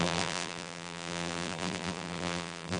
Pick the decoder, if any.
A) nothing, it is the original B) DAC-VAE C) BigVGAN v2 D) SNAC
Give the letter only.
C